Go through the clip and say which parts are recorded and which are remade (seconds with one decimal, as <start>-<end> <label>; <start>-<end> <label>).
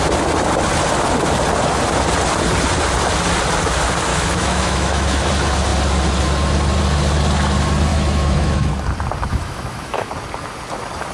0.0-4.1 recorded; 4.1-5.3 remade; 5.3-7.9 recorded; 7.9-8.7 remade; 8.7-9.3 recorded; 9.3-10.1 remade; 10.1-11.1 recorded